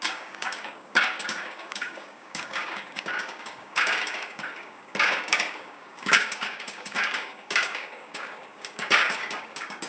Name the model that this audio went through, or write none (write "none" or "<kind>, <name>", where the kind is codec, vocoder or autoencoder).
codec, DAC